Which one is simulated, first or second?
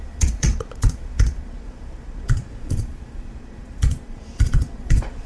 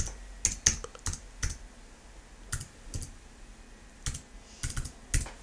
first